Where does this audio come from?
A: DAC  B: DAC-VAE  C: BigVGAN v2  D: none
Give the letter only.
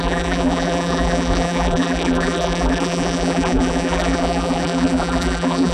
C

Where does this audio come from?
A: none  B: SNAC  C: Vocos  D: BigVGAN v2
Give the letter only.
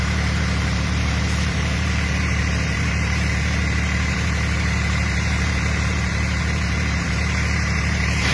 D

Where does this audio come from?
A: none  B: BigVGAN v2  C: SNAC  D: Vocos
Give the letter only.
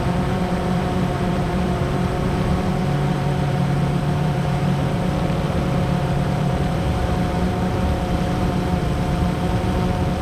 B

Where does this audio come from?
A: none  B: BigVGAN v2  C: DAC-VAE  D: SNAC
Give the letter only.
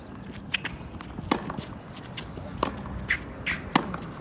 A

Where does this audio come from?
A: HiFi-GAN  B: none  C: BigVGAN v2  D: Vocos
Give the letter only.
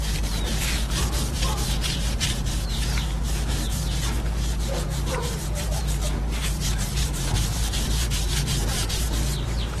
C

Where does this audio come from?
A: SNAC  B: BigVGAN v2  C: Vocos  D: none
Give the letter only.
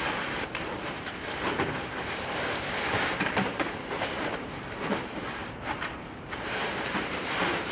B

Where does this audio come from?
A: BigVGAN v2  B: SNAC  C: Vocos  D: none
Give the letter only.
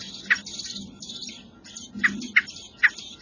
D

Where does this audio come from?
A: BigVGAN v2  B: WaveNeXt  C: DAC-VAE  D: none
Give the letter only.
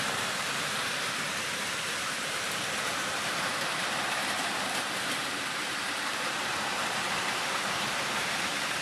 A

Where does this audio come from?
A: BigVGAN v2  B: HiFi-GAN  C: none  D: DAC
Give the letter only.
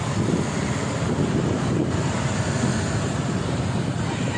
C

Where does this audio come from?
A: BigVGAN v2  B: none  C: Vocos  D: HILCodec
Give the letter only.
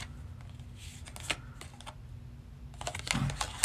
B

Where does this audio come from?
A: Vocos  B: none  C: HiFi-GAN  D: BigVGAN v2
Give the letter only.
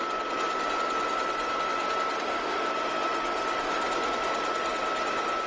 B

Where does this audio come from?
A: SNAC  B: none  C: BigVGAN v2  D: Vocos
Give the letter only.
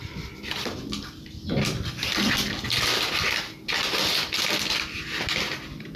B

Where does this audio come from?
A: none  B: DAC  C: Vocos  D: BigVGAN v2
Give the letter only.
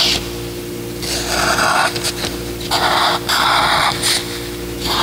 D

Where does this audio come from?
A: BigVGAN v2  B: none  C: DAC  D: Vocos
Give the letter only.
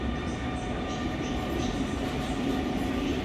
B